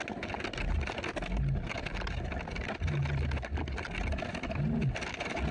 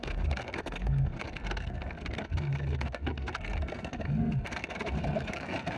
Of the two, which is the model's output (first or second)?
second